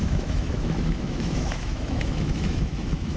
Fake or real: fake